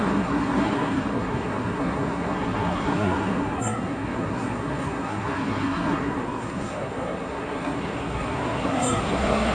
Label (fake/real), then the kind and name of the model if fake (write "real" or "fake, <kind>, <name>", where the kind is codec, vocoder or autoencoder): fake, codec, SNAC